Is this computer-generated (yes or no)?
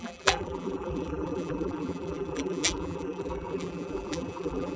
yes